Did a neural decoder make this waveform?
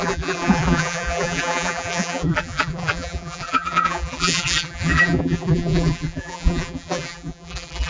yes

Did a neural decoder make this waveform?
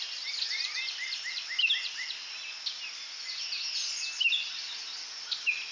no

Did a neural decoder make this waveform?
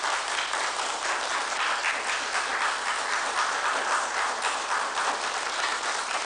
no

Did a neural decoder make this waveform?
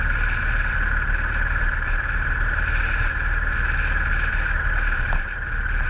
no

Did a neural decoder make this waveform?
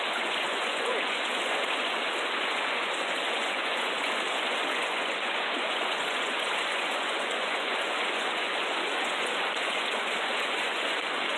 yes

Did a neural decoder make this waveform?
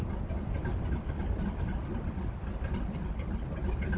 no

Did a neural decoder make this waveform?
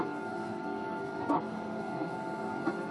yes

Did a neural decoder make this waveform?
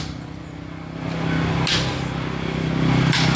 no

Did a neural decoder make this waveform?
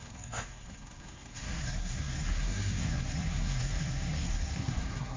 yes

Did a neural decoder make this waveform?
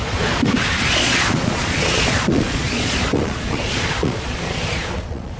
yes